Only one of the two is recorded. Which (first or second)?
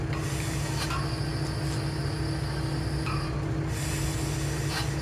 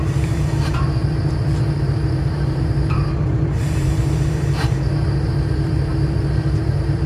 first